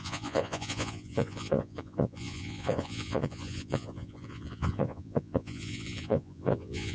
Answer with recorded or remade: remade